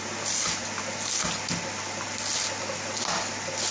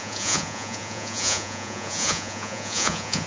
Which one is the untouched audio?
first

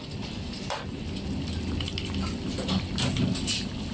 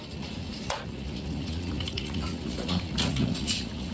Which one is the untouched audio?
first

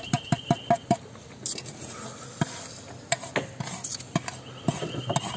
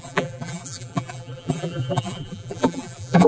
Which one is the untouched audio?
first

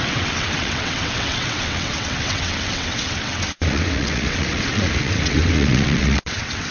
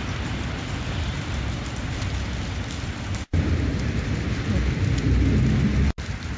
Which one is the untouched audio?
second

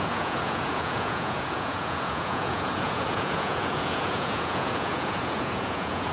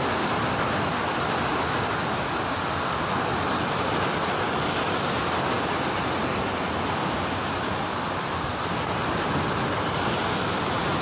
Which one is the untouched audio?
second